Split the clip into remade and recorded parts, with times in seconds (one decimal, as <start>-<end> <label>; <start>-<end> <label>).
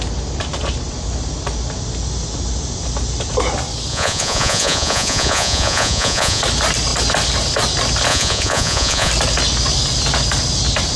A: 0.0-3.9 recorded; 3.9-6.4 remade; 6.4-8.1 recorded; 8.1-9.1 remade; 9.1-11.0 recorded